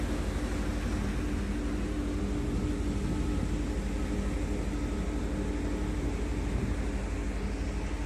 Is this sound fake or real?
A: real